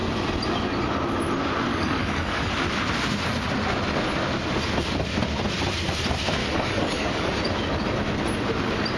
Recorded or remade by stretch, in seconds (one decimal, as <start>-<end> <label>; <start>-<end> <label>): 0.0-1.7 recorded; 1.7-2.5 remade; 2.5-6.4 recorded; 6.4-7.3 remade; 7.3-9.0 recorded